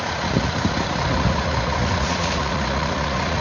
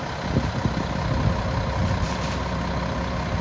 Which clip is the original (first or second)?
second